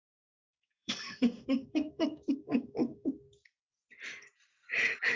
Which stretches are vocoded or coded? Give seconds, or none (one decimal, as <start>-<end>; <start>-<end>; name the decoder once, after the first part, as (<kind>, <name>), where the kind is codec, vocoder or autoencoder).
0.0-3.1 (codec, SNAC)